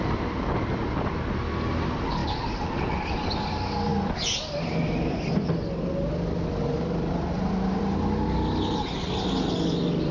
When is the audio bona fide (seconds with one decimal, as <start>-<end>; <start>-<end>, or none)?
0.0-10.1